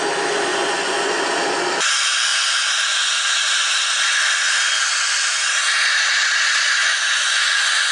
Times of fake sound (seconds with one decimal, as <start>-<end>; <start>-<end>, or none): 0.5-1.1; 6.8-7.9